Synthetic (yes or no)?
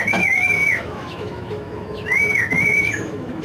yes